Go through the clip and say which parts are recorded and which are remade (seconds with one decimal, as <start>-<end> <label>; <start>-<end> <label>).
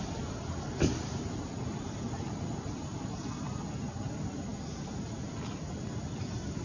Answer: 0.0-6.6 recorded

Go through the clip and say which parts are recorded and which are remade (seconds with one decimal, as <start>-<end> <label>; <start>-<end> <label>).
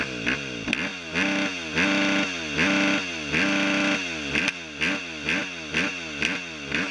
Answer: 0.0-6.9 recorded